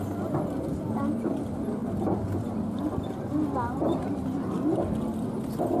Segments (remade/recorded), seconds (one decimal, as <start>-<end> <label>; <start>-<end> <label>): 0.0-1.8 recorded; 1.8-2.6 remade; 2.6-5.8 recorded